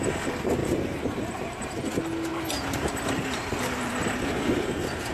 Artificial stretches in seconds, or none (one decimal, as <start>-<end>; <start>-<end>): 0.6-1.8; 2.3-5.1